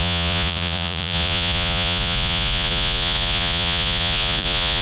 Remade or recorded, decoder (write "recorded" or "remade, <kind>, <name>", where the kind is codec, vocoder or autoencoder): remade, vocoder, Vocos